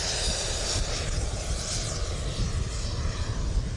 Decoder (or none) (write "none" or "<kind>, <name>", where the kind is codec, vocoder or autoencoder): vocoder, BigVGAN v2